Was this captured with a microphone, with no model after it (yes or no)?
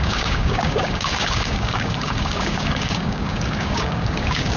no